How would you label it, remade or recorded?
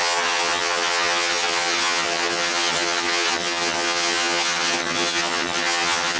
remade